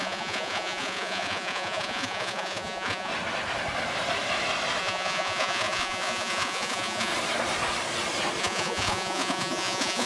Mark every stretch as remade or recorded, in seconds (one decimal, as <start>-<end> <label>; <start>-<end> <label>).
0.0-3.1 remade; 3.1-4.8 recorded; 4.8-7.1 remade; 7.1-8.4 recorded; 8.4-10.1 remade